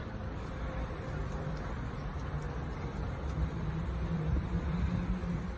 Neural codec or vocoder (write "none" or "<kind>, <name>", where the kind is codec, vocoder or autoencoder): vocoder, BigVGAN v2